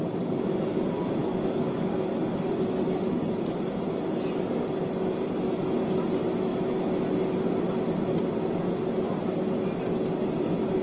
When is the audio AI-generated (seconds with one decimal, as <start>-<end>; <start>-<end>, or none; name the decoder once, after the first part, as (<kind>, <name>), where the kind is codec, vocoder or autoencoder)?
1.2-2.1 (codec, DAC)